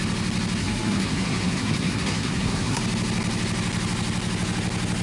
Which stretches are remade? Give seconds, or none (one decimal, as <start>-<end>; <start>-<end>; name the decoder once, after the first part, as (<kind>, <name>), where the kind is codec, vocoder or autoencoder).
0.6-2.8 (codec, SNAC)